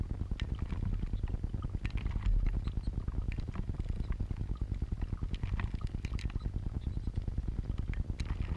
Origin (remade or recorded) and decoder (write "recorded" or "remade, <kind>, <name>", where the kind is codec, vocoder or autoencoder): recorded